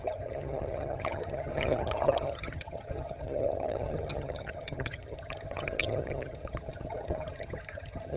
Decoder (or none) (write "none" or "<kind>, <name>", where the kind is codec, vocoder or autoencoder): vocoder, HiFi-GAN